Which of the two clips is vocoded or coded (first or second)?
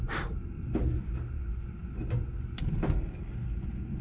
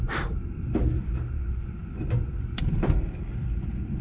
second